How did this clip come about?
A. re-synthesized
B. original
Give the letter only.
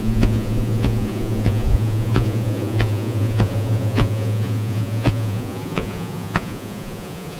A